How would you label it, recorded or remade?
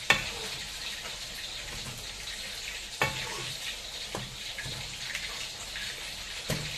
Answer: recorded